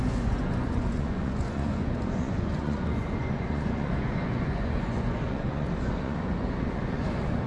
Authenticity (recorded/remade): remade